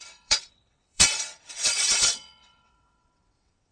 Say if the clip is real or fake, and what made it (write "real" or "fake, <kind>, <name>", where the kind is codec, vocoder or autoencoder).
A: fake, vocoder, WaveNeXt